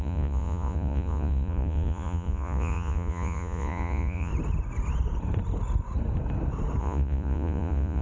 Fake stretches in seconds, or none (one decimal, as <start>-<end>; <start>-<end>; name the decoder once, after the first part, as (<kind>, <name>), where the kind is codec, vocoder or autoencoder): 0.0-4.3 (vocoder, Vocos); 6.8-8.0

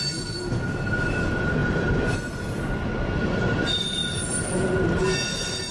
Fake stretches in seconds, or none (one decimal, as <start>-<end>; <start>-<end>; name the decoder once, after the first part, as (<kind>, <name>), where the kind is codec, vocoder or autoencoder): none